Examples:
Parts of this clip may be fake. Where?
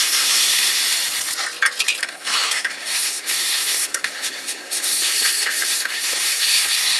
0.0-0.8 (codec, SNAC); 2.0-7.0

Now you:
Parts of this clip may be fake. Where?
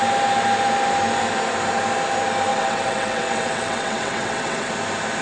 2.5-4.7 (vocoder, WaveNeXt)